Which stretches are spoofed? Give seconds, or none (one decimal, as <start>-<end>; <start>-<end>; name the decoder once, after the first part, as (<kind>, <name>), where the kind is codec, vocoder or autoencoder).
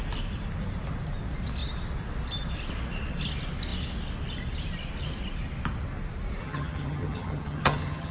6.4-8.1 (vocoder, HiFi-GAN)